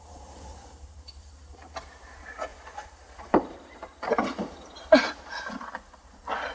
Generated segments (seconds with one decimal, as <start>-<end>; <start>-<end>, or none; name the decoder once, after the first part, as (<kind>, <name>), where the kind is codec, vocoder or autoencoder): 0.0-6.5 (vocoder, BigVGAN v2)

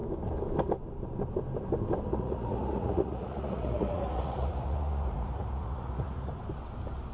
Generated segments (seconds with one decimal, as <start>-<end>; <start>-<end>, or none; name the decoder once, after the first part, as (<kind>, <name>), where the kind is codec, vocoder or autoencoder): 2.1-6.3 (vocoder, Vocos)